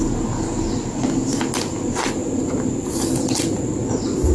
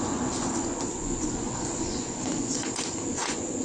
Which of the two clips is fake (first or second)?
second